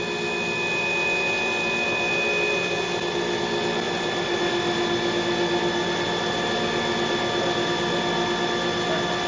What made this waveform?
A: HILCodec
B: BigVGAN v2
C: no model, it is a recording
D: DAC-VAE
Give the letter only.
C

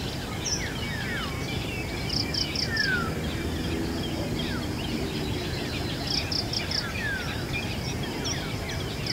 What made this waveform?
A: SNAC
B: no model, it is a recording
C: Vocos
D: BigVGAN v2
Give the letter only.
B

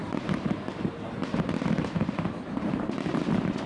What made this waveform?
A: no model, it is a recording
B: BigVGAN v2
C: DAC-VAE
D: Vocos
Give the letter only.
B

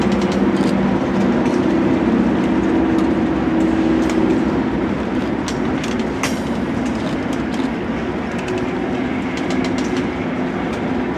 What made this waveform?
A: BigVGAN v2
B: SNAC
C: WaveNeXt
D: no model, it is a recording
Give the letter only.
D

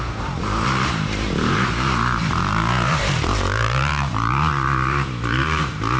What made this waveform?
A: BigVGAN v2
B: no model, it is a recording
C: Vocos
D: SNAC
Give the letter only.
A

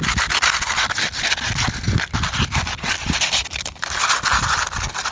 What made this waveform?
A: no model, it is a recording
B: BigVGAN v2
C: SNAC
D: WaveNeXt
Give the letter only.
A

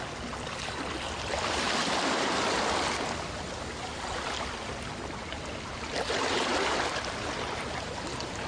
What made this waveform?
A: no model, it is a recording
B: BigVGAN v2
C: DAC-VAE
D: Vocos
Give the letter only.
A